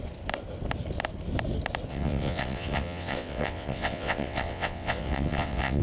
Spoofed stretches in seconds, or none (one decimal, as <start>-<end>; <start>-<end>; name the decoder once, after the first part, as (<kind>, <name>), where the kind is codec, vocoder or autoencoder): 1.9-5.8 (vocoder, WaveNeXt)